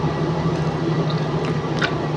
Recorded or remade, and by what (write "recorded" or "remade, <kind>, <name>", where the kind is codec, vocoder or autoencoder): recorded